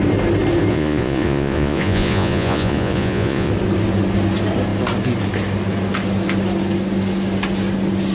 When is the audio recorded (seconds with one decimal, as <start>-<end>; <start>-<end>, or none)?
0.0-0.7; 3.5-8.1